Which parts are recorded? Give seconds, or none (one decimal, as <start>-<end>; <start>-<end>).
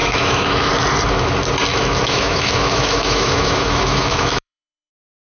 0.7-1.7; 4.9-5.4